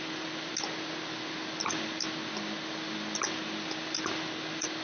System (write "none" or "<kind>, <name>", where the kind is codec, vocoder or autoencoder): none